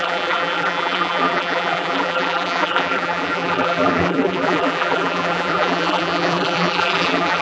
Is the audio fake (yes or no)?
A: yes